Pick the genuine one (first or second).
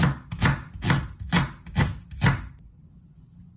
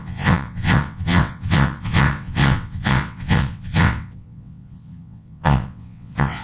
first